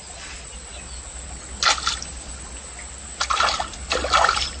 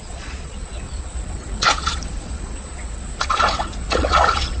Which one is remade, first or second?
second